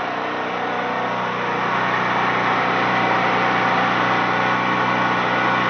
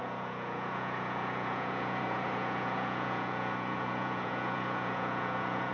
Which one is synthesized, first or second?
second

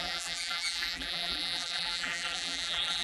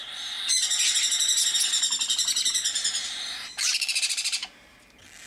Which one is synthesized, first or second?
first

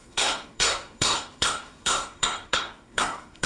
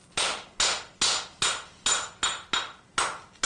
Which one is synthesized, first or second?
first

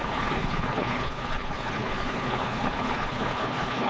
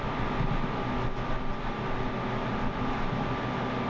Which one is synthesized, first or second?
first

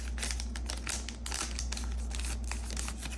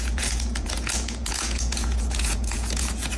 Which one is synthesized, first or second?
second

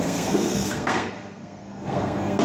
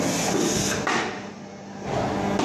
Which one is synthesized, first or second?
first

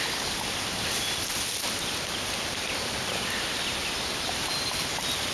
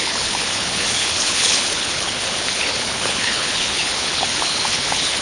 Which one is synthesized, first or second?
second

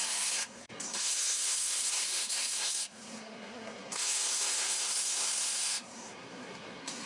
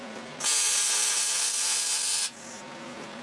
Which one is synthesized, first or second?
first